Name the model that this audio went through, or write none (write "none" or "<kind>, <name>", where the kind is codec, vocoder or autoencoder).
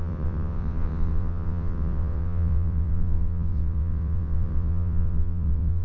vocoder, WaveNeXt